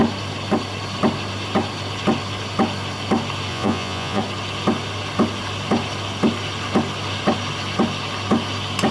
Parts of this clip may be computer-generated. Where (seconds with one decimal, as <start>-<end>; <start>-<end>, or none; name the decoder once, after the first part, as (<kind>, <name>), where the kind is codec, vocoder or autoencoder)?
3.5-4.2 (vocoder, Vocos)

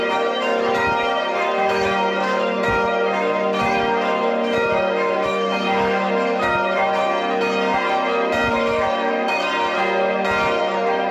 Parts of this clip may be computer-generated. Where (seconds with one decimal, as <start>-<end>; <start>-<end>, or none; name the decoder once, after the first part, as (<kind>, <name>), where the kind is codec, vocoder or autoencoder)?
0.0-7.1 (autoencoder, DAC-VAE); 8.5-9.5; 10.6-11.1

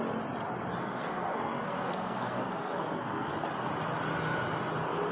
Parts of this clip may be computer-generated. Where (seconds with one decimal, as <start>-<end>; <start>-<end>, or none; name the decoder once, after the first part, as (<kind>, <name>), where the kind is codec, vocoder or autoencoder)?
0.8-3.3 (codec, SNAC)

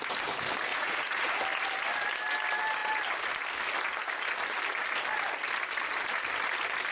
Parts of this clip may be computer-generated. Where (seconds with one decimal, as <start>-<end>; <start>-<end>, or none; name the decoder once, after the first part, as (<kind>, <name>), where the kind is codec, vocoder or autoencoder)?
0.7-1.4 (vocoder, Vocos)

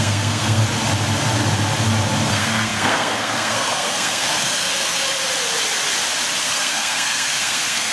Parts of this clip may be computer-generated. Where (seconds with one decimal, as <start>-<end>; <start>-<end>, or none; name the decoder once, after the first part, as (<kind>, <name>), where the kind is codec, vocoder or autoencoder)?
0.0-0.6 (codec, SNAC); 2.3-5.0; 6.4-7.9